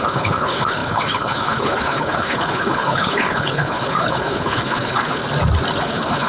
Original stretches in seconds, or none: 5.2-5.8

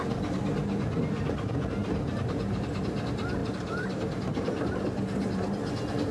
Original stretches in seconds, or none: 0.0-1.8; 2.8-3.4; 4.8-6.1

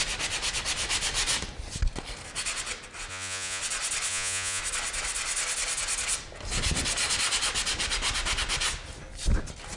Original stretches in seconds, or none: 0.0-3.1; 3.6-4.1; 4.6-9.8

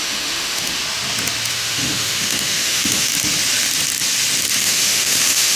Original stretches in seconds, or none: 0.8-1.5; 3.1-4.6

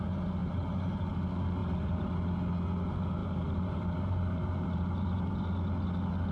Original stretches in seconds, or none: 0.0-0.4; 1.0-1.6; 2.1-3.2; 5.3-6.3

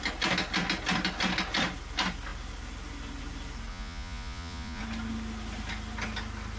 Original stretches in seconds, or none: 0.0-3.7; 4.8-6.6

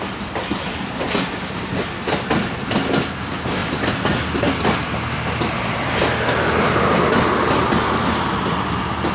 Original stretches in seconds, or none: 0.0-9.1

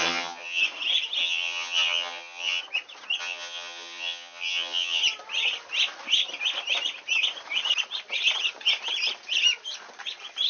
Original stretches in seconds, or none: 0.6-1.2; 2.6-3.2; 5.0-10.5